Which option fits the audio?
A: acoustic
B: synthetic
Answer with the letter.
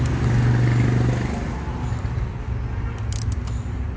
A